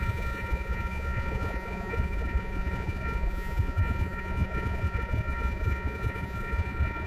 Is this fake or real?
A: fake